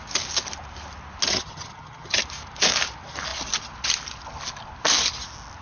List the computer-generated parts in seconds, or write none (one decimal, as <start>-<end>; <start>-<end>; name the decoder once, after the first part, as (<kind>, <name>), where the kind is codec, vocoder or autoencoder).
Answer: 1.3-2.2 (vocoder, HiFi-GAN)